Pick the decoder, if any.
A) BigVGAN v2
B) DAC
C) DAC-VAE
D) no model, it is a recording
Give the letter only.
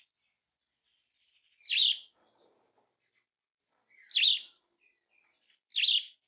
D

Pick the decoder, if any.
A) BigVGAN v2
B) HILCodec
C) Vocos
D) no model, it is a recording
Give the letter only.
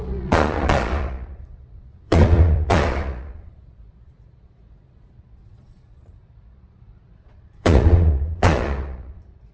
C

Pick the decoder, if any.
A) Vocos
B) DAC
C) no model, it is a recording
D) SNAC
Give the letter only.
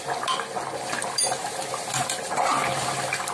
C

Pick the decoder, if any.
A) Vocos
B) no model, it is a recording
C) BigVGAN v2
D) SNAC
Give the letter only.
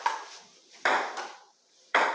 C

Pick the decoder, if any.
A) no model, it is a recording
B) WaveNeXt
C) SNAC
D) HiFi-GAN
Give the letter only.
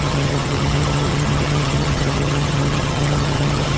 D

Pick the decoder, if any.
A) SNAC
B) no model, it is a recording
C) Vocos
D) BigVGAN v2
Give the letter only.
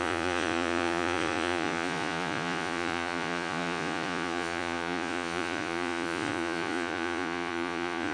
C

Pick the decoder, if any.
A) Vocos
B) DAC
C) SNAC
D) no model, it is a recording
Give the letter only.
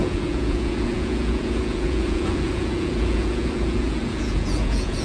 A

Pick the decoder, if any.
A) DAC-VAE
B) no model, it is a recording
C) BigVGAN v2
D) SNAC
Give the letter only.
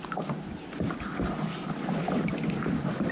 B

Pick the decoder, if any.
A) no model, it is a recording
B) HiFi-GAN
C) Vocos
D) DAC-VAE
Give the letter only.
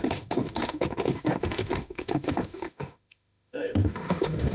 D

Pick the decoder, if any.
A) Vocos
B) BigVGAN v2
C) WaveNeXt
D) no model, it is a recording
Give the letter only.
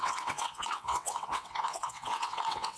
C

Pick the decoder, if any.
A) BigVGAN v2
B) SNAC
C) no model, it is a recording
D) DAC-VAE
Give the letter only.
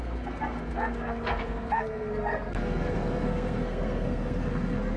B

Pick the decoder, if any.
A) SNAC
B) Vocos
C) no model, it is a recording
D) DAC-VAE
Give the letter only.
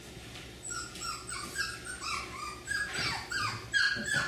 C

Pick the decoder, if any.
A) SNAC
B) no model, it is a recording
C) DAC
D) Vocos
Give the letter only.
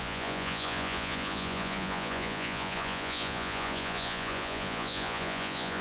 D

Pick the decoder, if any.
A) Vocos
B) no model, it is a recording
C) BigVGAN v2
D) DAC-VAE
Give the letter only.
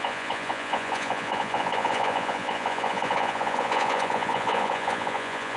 A